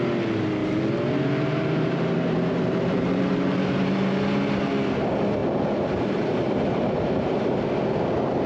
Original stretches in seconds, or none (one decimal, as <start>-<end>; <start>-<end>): 0.0-0.6; 3.6-5.4; 7.6-8.5